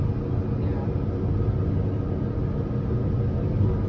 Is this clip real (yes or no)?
yes